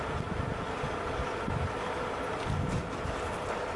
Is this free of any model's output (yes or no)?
yes